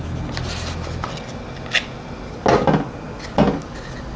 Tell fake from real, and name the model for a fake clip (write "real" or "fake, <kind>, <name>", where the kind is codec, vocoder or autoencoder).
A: real